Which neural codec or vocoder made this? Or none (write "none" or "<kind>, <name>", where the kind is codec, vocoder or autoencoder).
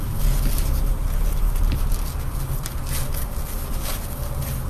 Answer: none